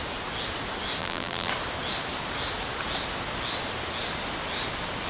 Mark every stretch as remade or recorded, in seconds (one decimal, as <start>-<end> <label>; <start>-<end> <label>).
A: 0.0-1.0 recorded; 1.0-1.5 remade; 1.5-5.1 recorded